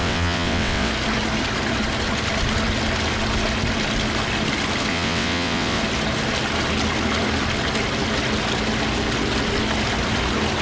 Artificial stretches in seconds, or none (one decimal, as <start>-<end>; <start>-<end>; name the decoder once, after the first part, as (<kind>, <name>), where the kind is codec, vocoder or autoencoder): 0.0-0.9 (vocoder, WaveNeXt); 4.9-5.8